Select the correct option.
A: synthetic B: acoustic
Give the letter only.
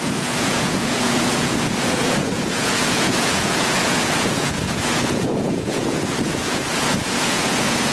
A